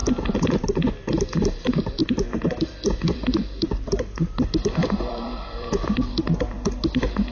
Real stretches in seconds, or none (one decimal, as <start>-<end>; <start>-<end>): 0.0-2.0; 6.4-7.3